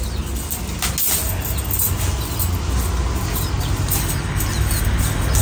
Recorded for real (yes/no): yes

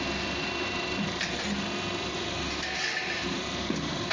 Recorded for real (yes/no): yes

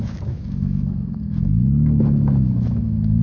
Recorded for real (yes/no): no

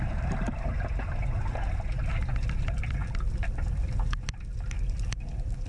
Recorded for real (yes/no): yes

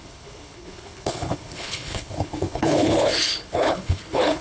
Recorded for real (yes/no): no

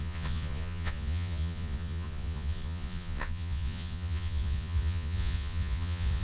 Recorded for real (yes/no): no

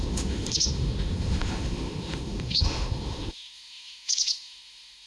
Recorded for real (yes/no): no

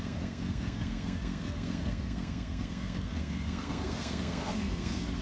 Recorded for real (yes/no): no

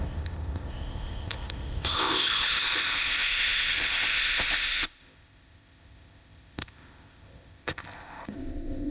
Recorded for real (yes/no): no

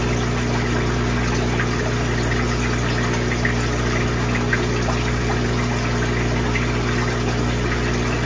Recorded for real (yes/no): yes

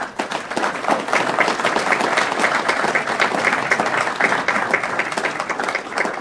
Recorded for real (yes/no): no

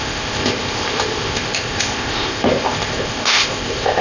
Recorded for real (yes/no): no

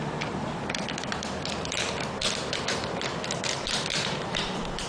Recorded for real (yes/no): no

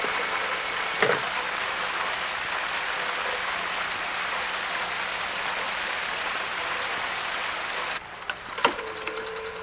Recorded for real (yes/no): yes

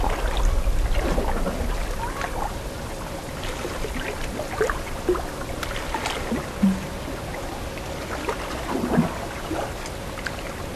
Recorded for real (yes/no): yes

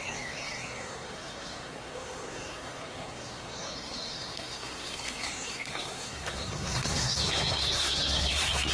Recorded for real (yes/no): no